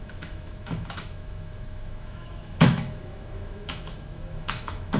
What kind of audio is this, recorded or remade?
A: remade